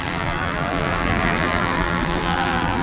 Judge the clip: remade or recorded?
remade